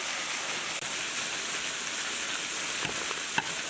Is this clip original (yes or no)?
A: yes